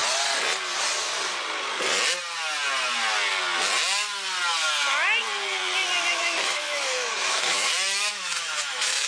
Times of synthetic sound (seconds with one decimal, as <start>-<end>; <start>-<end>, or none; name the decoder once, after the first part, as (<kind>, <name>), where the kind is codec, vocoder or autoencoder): 6.1-9.1 (autoencoder, DAC-VAE)